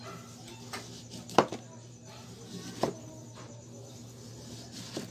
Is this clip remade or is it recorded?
recorded